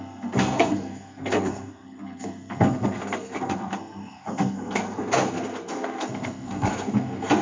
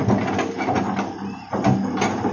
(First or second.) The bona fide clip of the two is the second